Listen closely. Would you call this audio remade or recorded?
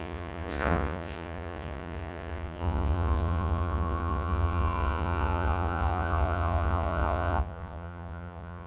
remade